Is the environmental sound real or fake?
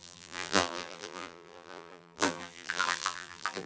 fake